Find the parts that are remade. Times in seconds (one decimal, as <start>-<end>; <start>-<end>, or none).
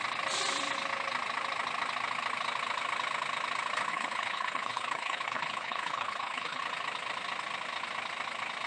3.9-6.6